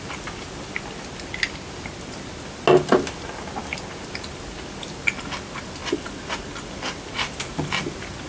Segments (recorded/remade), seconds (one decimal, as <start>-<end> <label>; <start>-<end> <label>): 0.0-5.8 recorded; 5.8-7.0 remade; 7.0-8.3 recorded